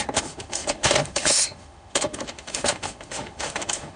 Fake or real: fake